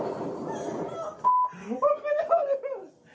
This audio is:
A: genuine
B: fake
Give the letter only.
A